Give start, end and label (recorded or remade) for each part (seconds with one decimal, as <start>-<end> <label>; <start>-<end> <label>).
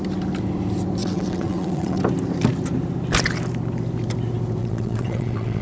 0.0-1.0 recorded; 1.0-2.0 remade; 2.0-4.6 recorded; 4.6-5.6 remade